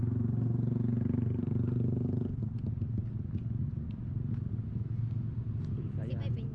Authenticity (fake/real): real